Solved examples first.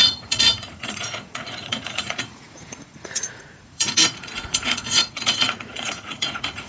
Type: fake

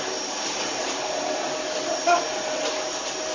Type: real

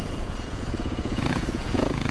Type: fake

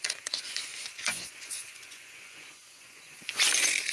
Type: fake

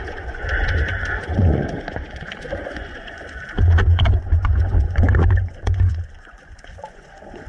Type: fake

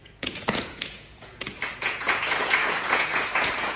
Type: fake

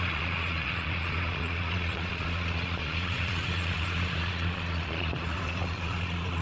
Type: fake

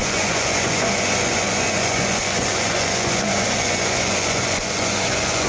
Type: fake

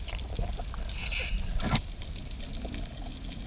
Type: real